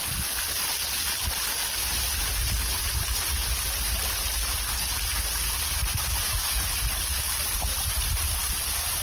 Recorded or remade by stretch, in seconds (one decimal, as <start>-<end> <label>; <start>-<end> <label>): 0.0-9.0 recorded